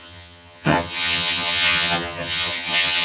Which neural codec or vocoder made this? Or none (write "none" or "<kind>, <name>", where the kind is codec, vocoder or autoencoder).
vocoder, HiFi-GAN